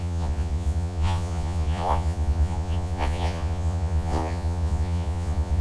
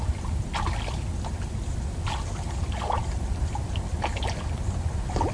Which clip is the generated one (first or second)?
first